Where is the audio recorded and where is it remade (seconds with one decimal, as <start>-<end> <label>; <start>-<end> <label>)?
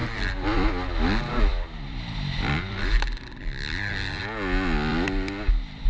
0.0-0.7 remade; 0.7-1.5 recorded; 1.5-4.2 remade; 4.2-4.9 recorded; 4.9-5.9 remade